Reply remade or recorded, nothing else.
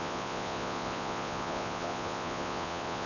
remade